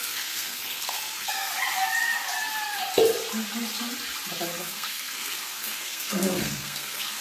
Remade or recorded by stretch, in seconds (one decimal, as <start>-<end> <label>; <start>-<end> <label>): 0.0-1.5 remade; 1.5-4.6 recorded; 4.6-7.2 remade